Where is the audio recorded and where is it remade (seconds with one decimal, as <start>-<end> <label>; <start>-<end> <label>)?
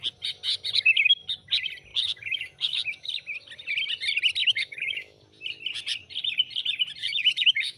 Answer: 0.0-1.9 recorded; 1.9-3.1 remade; 3.1-4.4 recorded; 4.4-5.2 remade; 5.2-7.0 recorded; 7.0-7.8 remade